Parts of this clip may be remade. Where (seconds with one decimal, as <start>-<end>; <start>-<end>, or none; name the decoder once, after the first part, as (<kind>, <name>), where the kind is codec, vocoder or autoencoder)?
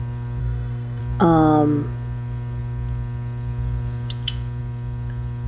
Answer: 0.4-1.0 (codec, SNAC)